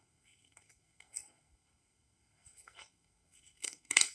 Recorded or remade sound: remade